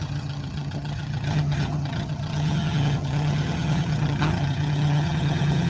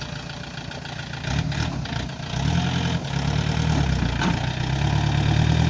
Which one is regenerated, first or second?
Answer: first